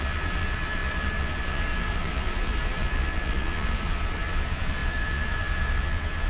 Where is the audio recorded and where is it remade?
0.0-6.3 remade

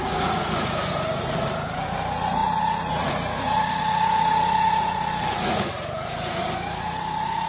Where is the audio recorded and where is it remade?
0.0-7.5 remade

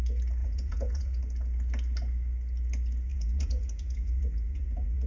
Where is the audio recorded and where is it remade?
0.0-0.4 recorded; 0.4-1.2 remade; 1.2-3.1 recorded; 3.1-5.1 remade